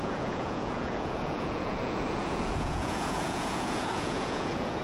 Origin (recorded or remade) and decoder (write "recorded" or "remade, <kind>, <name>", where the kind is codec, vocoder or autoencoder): remade, vocoder, Vocos